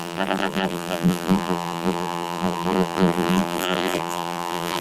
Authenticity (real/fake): fake